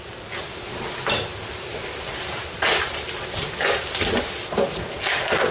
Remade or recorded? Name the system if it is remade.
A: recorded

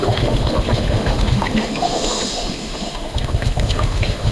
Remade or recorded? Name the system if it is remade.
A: remade, autoencoder, DAC-VAE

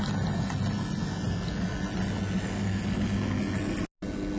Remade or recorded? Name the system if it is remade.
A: recorded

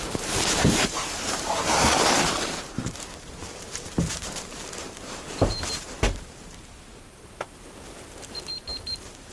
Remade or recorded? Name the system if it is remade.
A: remade, vocoder, BigVGAN v2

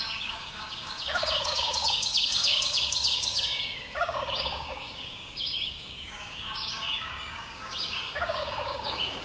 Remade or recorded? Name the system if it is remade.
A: remade, codec, DAC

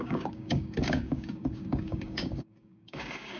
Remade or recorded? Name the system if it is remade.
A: remade, codec, DAC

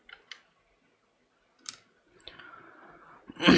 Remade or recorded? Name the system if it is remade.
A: recorded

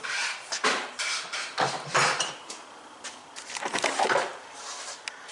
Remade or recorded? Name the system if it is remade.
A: recorded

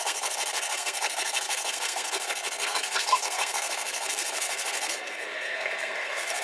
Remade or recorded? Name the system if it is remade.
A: remade, codec, SNAC